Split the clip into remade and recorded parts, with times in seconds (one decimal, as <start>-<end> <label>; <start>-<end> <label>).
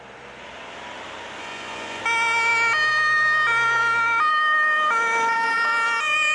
0.0-1.4 recorded; 1.4-2.0 remade; 2.0-6.3 recorded